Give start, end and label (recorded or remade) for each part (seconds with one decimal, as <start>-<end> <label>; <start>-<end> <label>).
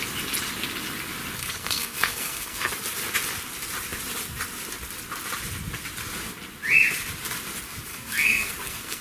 0.0-1.4 recorded; 1.4-2.7 remade; 2.7-7.9 recorded; 7.9-9.0 remade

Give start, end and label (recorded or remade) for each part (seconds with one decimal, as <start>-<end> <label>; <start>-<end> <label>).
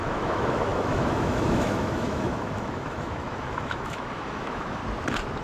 0.0-4.8 remade; 4.8-5.4 recorded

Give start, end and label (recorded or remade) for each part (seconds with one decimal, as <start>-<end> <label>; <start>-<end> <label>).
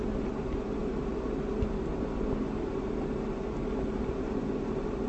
0.0-5.1 recorded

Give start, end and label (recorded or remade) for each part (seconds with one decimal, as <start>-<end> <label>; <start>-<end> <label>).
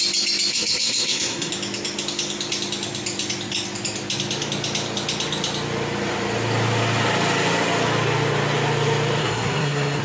0.0-0.5 recorded; 0.5-1.5 remade; 1.5-9.2 recorded; 9.2-10.0 remade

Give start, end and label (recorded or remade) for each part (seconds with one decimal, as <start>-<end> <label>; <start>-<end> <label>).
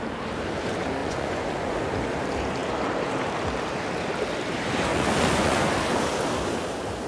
0.0-1.0 recorded; 1.0-1.8 remade; 1.8-4.9 recorded; 4.9-5.7 remade; 5.7-7.1 recorded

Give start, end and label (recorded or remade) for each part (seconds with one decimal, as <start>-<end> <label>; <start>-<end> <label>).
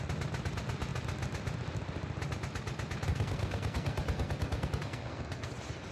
0.0-3.1 recorded; 3.1-5.5 remade; 5.5-5.9 recorded